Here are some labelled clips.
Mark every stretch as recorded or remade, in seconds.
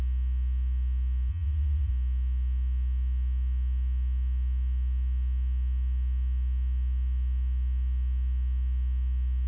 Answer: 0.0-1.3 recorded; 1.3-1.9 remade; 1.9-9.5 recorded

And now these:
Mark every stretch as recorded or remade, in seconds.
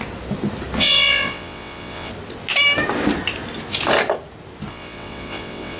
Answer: 0.0-0.8 recorded; 0.8-2.1 remade; 2.1-4.7 recorded; 4.7-5.8 remade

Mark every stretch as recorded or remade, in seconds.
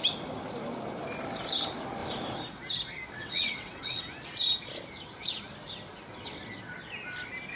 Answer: 0.0-3.1 recorded; 3.1-4.0 remade; 4.0-7.6 recorded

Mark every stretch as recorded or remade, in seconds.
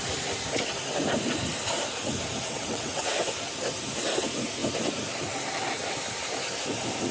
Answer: 0.0-2.4 recorded; 2.4-3.0 remade; 3.0-7.1 recorded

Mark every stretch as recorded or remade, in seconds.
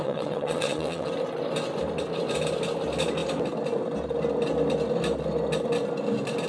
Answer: 0.0-1.1 remade; 1.1-6.5 recorded